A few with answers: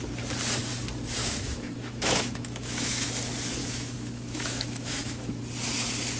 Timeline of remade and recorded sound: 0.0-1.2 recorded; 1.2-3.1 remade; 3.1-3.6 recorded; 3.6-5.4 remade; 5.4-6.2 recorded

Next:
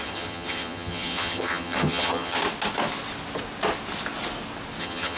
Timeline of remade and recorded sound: 0.0-2.4 remade; 2.4-4.8 recorded; 4.8-5.2 remade

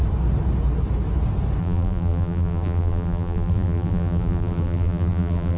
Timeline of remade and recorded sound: 0.0-1.6 recorded; 1.6-5.6 remade

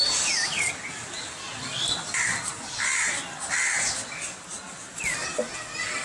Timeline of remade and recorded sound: 0.0-6.0 recorded

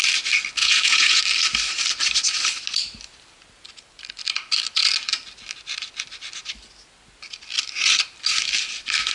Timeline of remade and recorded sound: 0.0-0.6 recorded; 0.6-1.2 remade; 1.2-9.1 recorded

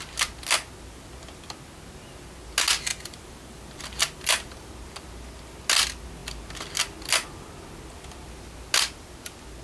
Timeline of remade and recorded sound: 0.0-2.9 recorded; 2.9-4.7 remade; 4.7-9.6 recorded

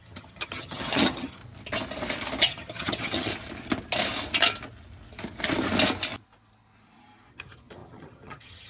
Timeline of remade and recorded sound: 0.0-1.4 remade; 1.4-2.4 recorded; 2.4-3.3 remade; 3.3-7.3 recorded; 7.3-8.7 remade